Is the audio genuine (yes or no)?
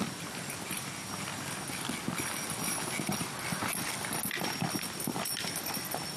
yes